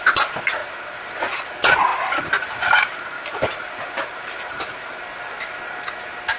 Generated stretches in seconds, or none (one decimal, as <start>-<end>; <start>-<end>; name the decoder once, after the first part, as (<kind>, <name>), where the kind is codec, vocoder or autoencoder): 0.6-1.4 (vocoder, BigVGAN v2); 1.9-5.0